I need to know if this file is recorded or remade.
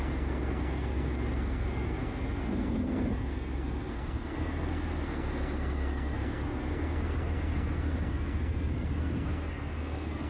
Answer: remade